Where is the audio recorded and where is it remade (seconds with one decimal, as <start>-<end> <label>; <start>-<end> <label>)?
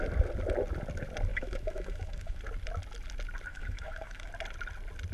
0.0-1.3 recorded; 1.3-2.4 remade; 2.4-3.5 recorded; 3.5-4.3 remade; 4.3-5.1 recorded